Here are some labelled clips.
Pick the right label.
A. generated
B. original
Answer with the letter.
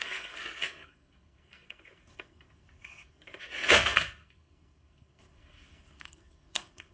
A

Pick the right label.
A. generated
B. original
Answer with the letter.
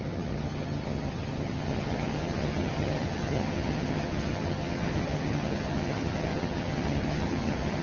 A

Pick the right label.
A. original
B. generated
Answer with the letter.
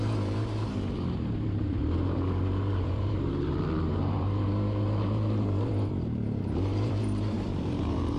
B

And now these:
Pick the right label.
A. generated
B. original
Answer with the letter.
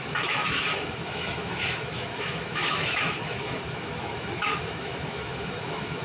A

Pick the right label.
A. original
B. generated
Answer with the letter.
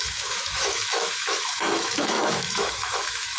B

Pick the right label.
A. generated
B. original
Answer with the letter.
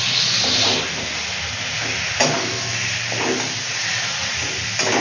B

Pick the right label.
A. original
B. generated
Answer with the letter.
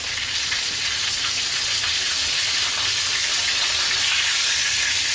A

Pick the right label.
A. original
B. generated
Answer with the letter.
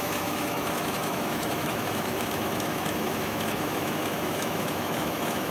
B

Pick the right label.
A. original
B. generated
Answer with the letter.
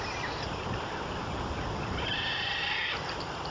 A